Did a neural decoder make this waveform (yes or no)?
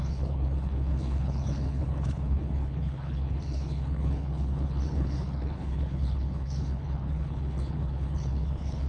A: yes